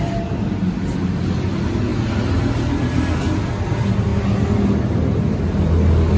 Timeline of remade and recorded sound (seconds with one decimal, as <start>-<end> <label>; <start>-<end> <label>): 0.0-6.2 recorded